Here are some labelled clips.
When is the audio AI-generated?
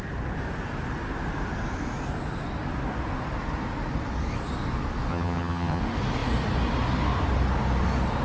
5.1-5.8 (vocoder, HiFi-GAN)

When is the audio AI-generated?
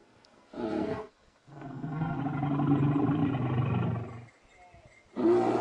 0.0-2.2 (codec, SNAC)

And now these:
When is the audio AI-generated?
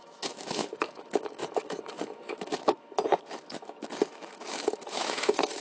0.0-5.6 (autoencoder, DAC-VAE)